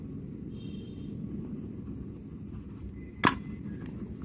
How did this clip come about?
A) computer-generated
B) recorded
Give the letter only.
B